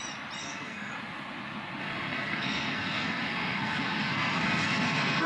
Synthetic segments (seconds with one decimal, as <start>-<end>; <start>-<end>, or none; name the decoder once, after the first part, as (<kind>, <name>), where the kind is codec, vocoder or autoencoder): 0.4-0.9 (codec, SNAC); 1.8-5.3